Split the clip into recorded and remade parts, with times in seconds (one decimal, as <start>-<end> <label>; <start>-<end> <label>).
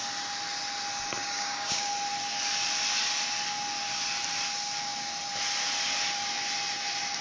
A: 0.0-1.2 recorded; 1.2-1.9 remade; 1.9-7.2 recorded